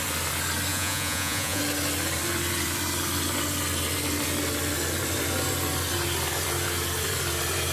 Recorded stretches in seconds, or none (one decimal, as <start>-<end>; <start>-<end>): 0.0-0.7; 1.6-7.7